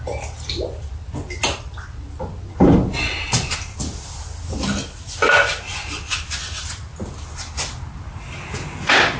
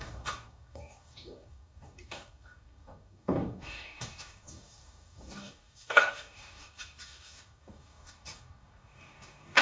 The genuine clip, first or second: first